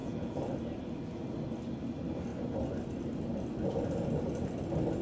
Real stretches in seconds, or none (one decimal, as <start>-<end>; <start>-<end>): 0.5-5.0